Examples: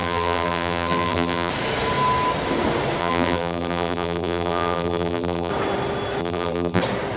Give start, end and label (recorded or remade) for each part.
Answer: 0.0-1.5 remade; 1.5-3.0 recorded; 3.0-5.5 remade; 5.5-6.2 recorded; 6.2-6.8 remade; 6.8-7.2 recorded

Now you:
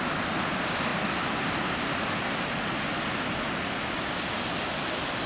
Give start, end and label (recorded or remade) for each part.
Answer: 0.0-5.3 recorded

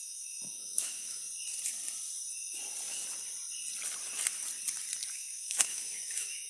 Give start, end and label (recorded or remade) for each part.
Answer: 0.0-1.2 remade; 1.2-5.1 recorded; 5.1-6.5 remade

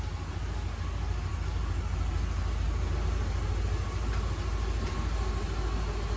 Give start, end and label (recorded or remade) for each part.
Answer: 0.0-6.2 recorded

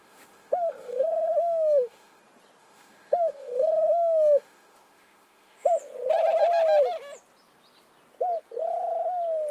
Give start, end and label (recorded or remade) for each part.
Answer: 0.0-2.2 remade; 2.2-2.6 recorded; 2.6-5.7 remade; 5.7-9.5 recorded

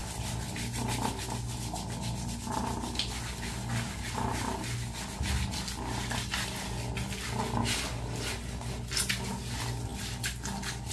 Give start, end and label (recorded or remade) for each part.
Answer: 0.0-10.9 recorded

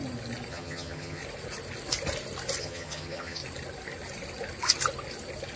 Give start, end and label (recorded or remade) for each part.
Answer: 0.0-0.5 recorded; 0.5-1.2 remade; 1.2-2.6 recorded; 2.6-3.4 remade; 3.4-5.6 recorded